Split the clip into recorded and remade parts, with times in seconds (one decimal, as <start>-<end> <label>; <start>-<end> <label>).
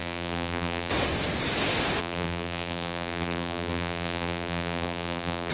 0.0-0.9 remade; 0.9-2.0 recorded; 2.0-5.5 remade